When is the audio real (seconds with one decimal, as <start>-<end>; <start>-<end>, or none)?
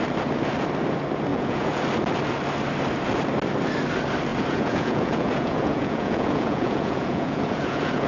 0.0-1.3; 1.8-4.3